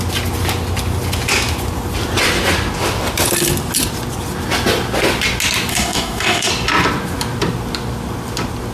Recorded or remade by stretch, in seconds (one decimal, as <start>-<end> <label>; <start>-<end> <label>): 0.0-5.7 recorded; 5.7-6.5 remade; 6.5-8.7 recorded